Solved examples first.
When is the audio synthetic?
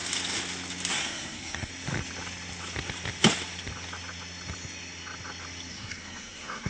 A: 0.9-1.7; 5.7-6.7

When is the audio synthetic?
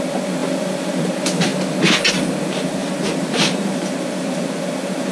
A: 2.8-4.6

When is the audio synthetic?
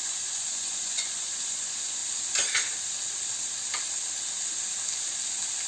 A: 0.0-2.0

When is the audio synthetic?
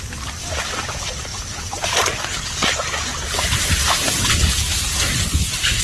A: 1.3-2.4; 3.1-4.3